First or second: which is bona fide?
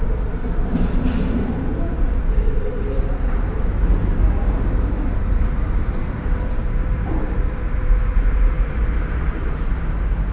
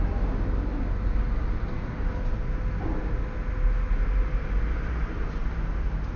second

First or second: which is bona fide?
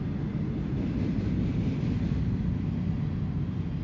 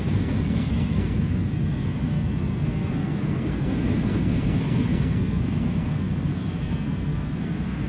first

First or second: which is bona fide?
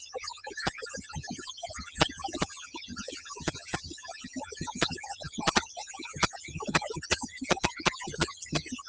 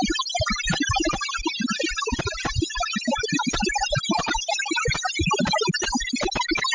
second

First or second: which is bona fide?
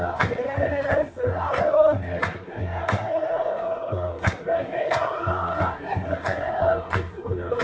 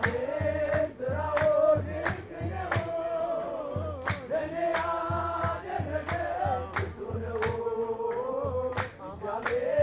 second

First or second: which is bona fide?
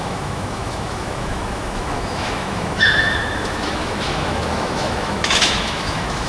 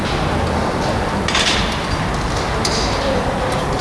second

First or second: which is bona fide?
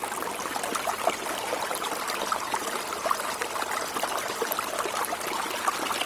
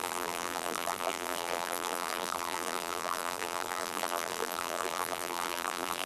first